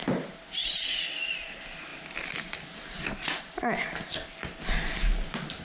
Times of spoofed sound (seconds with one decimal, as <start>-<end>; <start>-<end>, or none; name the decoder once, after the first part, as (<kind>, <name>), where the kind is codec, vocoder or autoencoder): 0.6-1.3 (vocoder, Vocos)